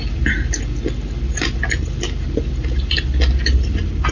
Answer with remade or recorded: recorded